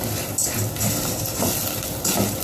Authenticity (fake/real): real